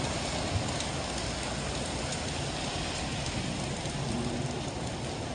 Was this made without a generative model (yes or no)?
yes